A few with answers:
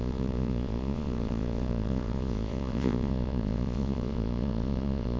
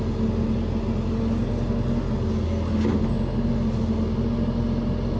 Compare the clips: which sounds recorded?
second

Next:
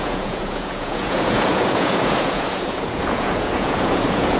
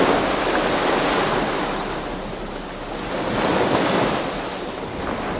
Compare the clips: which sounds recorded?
second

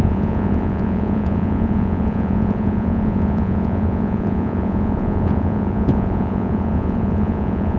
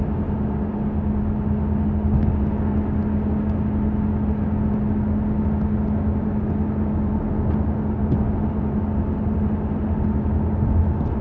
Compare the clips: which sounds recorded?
second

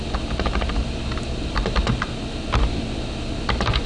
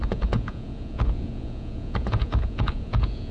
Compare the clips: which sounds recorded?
first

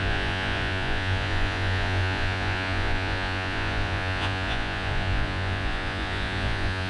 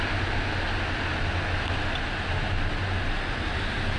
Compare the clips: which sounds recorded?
second